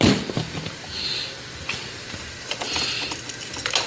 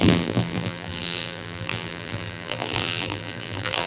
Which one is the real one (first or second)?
first